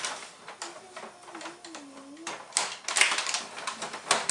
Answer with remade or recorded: recorded